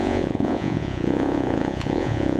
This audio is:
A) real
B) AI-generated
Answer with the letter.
B